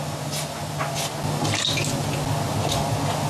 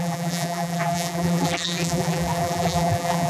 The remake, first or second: second